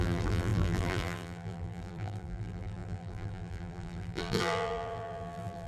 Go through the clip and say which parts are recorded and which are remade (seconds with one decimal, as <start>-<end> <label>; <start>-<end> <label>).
0.0-5.7 remade